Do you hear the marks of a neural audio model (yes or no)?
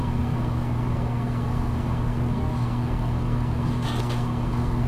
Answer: yes